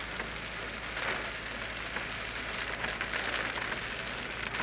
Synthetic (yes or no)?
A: no